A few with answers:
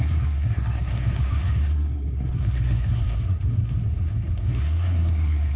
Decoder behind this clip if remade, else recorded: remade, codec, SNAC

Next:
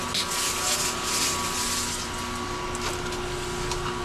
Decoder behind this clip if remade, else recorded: recorded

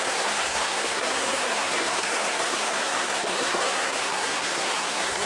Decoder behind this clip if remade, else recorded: remade, codec, SNAC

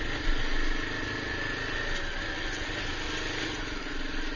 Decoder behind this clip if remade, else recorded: recorded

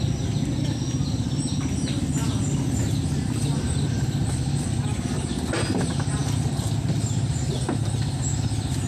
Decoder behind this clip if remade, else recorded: recorded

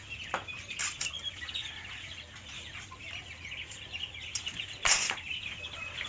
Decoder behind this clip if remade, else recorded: recorded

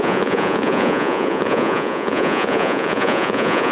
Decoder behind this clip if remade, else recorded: remade, vocoder, Vocos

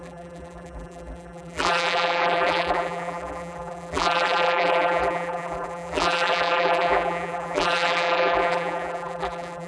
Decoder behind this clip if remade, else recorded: remade, vocoder, BigVGAN v2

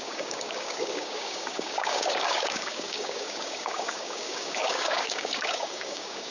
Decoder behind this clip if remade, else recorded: remade, codec, DAC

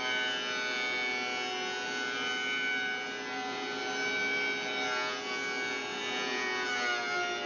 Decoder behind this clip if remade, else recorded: recorded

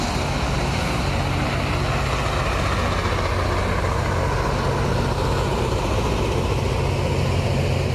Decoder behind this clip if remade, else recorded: recorded